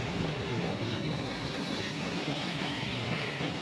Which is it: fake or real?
fake